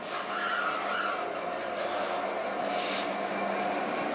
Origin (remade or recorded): recorded